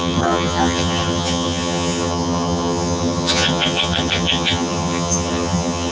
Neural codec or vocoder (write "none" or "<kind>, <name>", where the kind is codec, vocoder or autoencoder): vocoder, HiFi-GAN